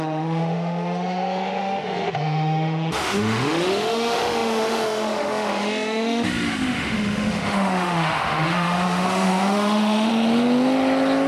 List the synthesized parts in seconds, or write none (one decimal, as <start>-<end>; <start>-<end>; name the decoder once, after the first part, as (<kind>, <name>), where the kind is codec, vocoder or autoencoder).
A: 0.0-10.1 (autoencoder, DAC-VAE)